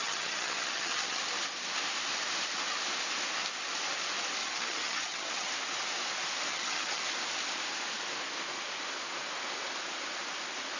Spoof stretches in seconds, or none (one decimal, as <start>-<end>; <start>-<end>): 0.0-1.2; 4.4-5.5; 6.5-7.0